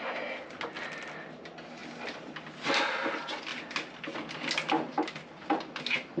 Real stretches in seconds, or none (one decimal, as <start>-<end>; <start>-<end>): 0.0-6.2

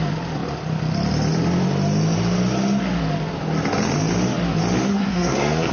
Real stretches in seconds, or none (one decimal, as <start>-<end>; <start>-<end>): 0.0-4.9

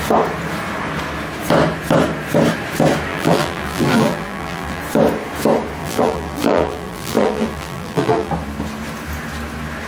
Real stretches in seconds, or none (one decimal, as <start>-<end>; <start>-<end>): 0.0-3.1; 4.8-5.8; 8.3-9.9

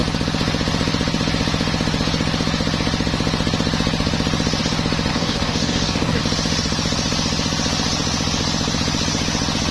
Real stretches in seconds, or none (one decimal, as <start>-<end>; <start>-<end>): 0.0-5.1; 6.2-9.7

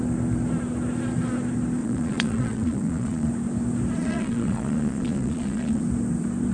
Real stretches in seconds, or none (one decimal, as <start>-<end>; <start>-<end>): 0.0-1.8; 3.3-4.0; 5.8-6.5

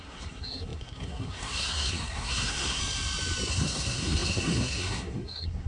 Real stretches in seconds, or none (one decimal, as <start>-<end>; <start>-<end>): 2.8-3.5

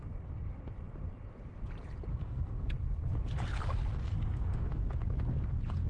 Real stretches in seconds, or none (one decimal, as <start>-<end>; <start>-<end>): 0.0-2.1; 2.7-4.0; 4.7-5.9